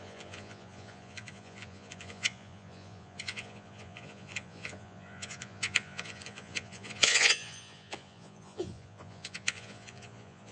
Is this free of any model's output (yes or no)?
no